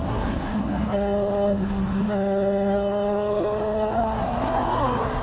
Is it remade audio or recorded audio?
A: remade